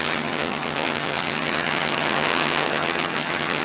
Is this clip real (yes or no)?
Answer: no